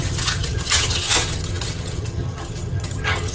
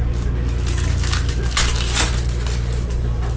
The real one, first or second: second